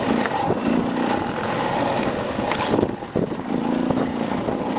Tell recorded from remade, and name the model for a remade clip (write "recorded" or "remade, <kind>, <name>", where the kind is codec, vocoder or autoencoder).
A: recorded